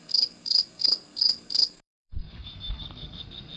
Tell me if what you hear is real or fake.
fake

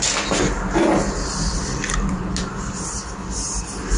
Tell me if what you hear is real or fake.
real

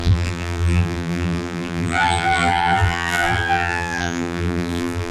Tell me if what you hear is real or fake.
fake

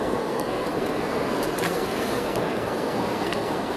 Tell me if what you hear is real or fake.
fake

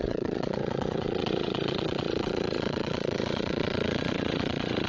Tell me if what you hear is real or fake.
fake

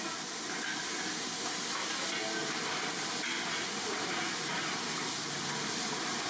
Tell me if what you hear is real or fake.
real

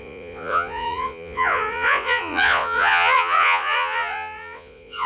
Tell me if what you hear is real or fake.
fake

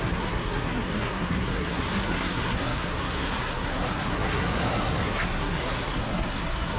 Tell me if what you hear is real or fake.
fake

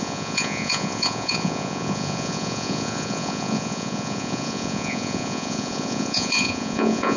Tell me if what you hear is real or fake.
fake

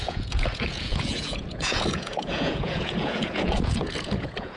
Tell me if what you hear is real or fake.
fake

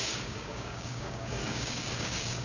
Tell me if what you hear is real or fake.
fake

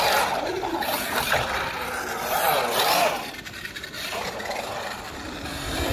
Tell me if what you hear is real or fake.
fake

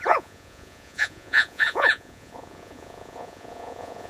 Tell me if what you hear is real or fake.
fake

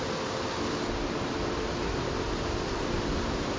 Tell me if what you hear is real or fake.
real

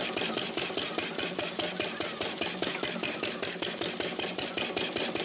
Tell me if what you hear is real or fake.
real